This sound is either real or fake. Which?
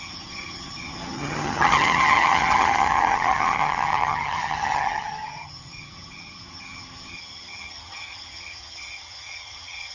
fake